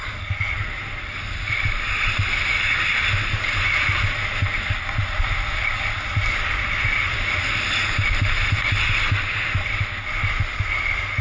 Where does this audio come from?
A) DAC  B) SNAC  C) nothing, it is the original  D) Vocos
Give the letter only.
C